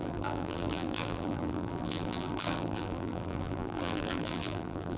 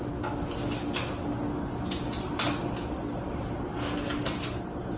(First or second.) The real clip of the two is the second